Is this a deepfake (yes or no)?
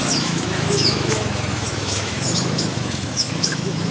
yes